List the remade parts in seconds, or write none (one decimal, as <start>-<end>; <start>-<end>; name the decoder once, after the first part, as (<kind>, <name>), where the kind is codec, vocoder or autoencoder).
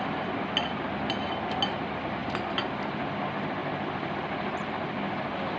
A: 2.2-3.1 (vocoder, BigVGAN v2)